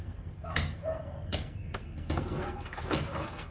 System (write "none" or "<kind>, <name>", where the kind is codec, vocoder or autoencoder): codec, SNAC